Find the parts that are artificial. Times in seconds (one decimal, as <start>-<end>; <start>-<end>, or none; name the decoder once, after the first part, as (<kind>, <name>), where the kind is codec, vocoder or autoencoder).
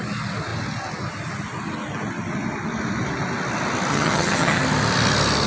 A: 3.9-4.6 (vocoder, HiFi-GAN)